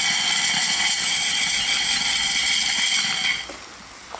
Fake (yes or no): no